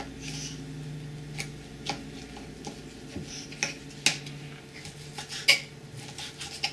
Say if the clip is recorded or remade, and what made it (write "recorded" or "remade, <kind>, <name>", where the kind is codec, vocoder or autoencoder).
recorded